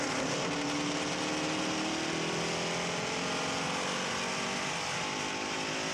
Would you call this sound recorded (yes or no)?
yes